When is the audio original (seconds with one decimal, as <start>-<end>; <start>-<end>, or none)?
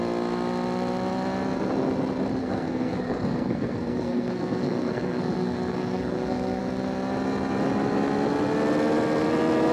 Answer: 0.0-2.4; 6.6-9.7